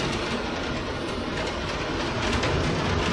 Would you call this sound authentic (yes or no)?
yes